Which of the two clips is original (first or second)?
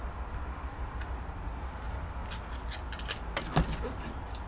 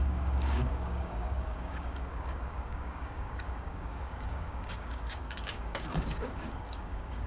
first